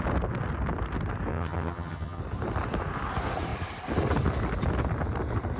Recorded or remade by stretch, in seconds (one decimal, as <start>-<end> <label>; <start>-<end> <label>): 0.0-1.3 recorded; 1.3-2.2 remade; 2.2-5.6 recorded